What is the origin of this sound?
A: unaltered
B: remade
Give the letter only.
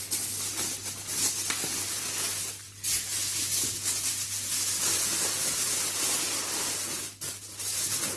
A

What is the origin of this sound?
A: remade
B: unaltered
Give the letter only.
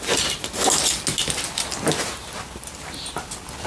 B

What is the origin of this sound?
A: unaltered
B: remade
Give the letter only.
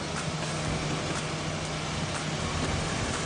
A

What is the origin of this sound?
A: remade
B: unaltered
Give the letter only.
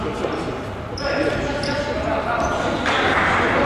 A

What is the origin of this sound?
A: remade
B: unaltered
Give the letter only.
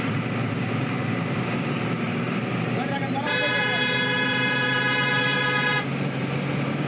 A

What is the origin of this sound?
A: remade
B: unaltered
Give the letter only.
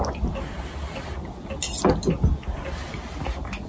B